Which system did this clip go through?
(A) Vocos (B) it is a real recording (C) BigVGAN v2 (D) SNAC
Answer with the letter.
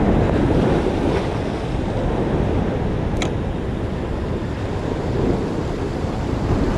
B